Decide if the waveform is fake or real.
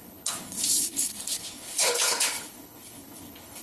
fake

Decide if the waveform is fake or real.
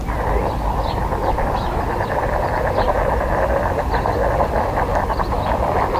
real